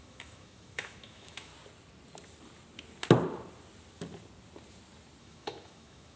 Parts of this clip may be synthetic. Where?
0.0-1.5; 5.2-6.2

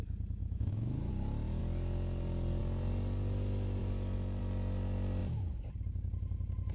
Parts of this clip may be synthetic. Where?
0.4-1.1

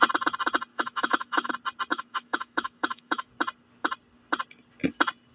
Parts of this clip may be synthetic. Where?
0.7-1.5; 1.9-3.3

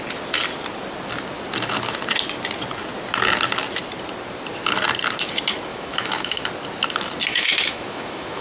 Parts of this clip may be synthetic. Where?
5.7-6.4; 7.3-8.4

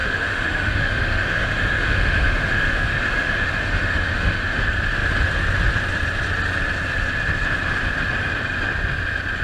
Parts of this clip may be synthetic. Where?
0.0-4.6

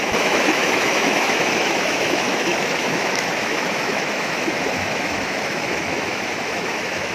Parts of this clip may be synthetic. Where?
0.0-7.1